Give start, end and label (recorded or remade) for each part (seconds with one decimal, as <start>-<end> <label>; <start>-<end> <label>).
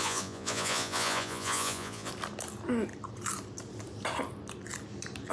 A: 0.0-2.1 remade; 2.1-5.3 recorded